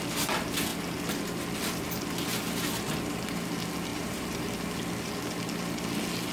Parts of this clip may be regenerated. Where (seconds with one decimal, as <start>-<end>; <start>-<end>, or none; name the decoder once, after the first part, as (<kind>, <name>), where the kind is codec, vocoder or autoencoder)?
3.9-4.5 (vocoder, BigVGAN v2)